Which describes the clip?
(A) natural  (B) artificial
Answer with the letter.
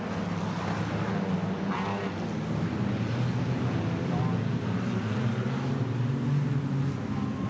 A